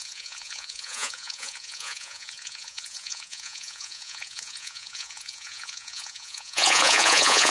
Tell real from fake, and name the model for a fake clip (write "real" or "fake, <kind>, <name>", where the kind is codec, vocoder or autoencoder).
fake, vocoder, Vocos